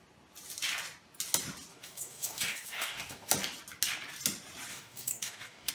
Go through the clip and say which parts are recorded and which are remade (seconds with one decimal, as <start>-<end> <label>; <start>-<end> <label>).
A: 0.0-1.7 recorded; 1.7-3.3 remade; 3.3-4.7 recorded; 4.7-5.7 remade